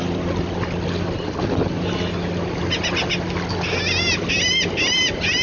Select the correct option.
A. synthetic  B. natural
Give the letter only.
B